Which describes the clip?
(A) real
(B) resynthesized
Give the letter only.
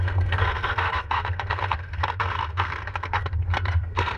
B